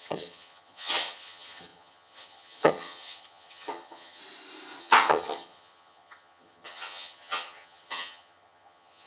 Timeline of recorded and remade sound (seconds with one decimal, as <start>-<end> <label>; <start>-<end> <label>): 0.0-4.2 remade; 4.2-4.8 recorded; 4.8-9.1 remade